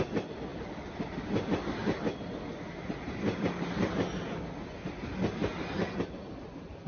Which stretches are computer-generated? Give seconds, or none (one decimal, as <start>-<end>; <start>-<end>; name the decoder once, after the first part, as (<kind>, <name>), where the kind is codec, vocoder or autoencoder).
0.0-1.8 (vocoder, BigVGAN v2); 5.0-5.4; 6.3-6.9